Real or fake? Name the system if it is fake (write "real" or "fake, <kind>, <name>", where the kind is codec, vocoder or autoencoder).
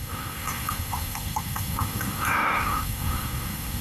fake, codec, SNAC